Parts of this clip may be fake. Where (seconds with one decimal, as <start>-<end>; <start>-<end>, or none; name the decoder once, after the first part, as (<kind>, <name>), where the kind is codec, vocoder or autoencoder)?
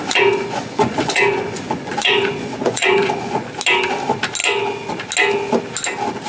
0.0-3.5 (vocoder, Vocos)